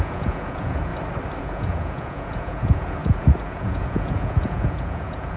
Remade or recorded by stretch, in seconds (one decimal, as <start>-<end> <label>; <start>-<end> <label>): 0.0-0.9 remade; 0.9-1.4 recorded; 1.4-5.4 remade